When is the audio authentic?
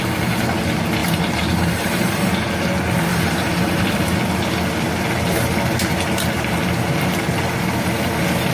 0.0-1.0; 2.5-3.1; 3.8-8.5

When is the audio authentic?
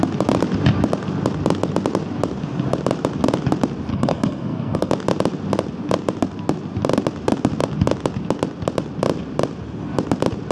0.0-3.9; 4.9-10.5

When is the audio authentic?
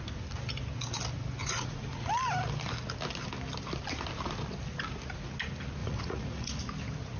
0.0-1.4; 2.1-5.8; 6.6-7.2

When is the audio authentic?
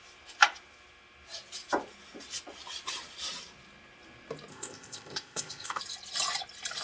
0.0-4.5; 5.8-6.8